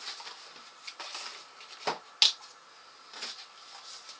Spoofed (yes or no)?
no